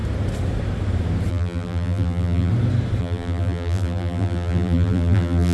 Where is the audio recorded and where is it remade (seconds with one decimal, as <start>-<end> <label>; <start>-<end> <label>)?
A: 0.0-1.3 recorded; 1.3-2.5 remade; 2.5-3.0 recorded; 3.0-5.5 remade